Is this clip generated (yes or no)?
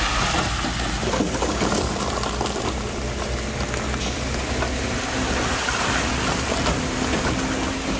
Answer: no